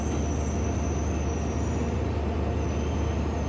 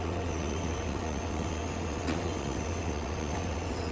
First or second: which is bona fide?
first